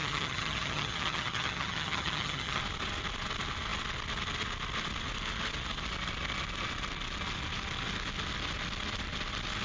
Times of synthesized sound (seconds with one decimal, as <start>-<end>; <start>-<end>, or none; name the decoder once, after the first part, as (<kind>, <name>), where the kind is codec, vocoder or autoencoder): 0.0-2.6 (vocoder, HiFi-GAN)